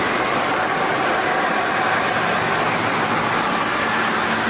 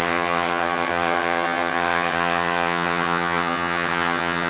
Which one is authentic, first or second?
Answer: first